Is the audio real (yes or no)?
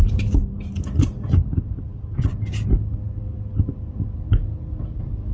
yes